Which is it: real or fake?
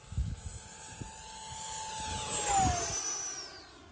real